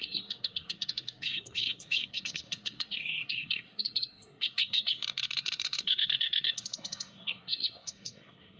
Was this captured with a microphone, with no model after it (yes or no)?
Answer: no